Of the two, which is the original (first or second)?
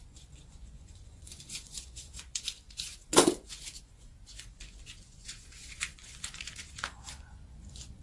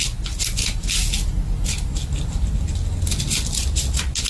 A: second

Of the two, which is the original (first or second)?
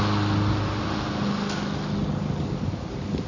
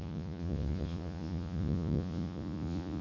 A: first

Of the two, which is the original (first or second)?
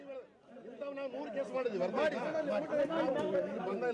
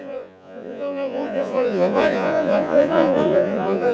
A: first